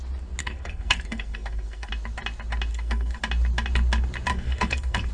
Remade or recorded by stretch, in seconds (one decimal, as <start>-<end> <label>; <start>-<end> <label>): 0.0-0.4 recorded; 0.4-1.9 remade; 1.9-2.7 recorded; 2.7-3.2 remade; 3.2-4.3 recorded; 4.3-5.1 remade